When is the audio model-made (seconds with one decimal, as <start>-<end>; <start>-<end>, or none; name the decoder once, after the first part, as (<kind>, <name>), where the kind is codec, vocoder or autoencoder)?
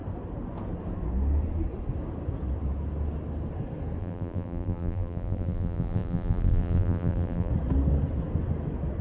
4.0-7.5 (vocoder, BigVGAN v2)